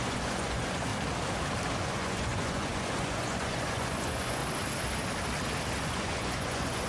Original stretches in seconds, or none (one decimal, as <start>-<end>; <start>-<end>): 0.9-1.8; 4.4-5.8